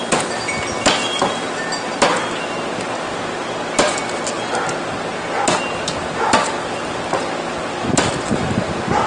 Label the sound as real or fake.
real